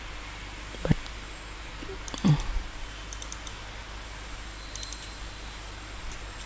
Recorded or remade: recorded